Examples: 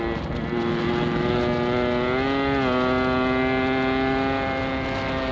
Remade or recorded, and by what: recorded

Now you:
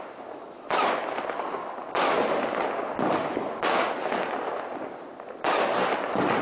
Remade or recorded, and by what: recorded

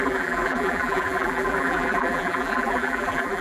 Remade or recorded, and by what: remade, vocoder, BigVGAN v2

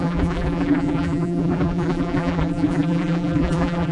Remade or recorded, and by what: remade, vocoder, BigVGAN v2